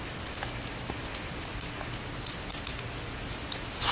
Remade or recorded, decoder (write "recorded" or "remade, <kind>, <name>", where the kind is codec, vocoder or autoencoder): recorded